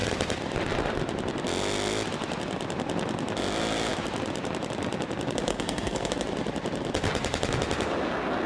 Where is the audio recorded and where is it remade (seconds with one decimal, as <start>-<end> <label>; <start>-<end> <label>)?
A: 0.0-5.5 recorded; 5.5-6.1 remade; 6.1-8.5 recorded